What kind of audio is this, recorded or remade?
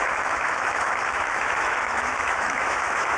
remade